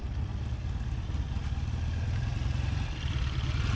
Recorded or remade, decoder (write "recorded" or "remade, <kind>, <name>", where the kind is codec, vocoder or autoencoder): recorded